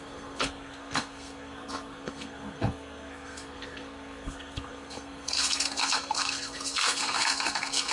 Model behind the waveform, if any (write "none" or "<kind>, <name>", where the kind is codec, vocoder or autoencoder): codec, SNAC